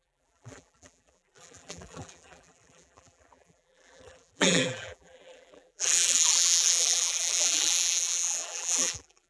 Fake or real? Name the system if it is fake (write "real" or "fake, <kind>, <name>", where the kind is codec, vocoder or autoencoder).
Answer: fake, vocoder, BigVGAN v2